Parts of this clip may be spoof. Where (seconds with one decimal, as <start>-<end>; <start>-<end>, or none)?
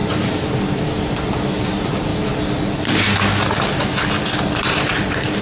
0.0-2.1; 4.4-5.4